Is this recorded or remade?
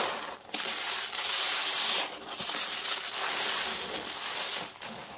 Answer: recorded